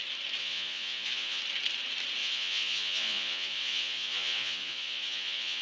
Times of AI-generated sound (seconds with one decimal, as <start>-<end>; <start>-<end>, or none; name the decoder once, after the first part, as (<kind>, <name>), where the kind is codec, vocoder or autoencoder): 0.4-1.4 (vocoder, Vocos); 2.2-5.6

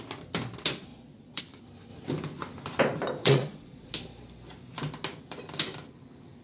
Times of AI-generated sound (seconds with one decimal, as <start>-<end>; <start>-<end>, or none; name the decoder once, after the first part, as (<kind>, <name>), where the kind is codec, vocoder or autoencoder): 0.9-1.4 (vocoder, Vocos); 3.2-3.9

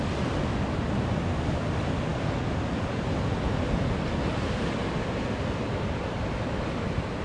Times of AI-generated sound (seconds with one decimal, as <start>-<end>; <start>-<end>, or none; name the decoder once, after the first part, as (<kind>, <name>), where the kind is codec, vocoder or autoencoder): none

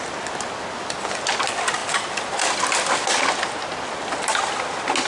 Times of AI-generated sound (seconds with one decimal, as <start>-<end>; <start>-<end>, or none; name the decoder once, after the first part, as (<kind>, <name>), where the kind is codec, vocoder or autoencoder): none

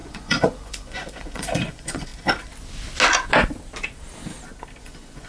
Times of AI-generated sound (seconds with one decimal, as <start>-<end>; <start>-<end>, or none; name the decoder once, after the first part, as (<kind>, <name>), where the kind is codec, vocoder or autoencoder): 0.0-2.1 (vocoder, Vocos); 4.8-5.3